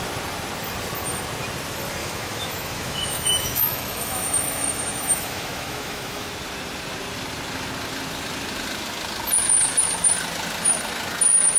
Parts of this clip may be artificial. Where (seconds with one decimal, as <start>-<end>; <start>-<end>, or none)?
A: 2.0-6.3